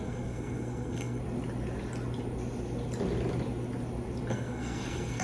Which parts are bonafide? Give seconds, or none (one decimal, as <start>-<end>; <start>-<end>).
1.2-4.3